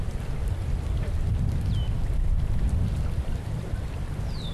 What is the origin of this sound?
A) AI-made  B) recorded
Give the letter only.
A